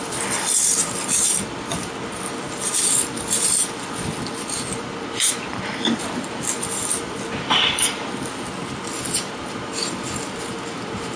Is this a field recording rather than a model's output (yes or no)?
no